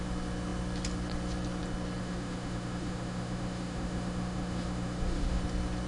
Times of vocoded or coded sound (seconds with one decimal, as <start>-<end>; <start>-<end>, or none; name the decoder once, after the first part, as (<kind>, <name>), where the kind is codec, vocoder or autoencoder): 2.0-5.4 (autoencoder, DAC-VAE)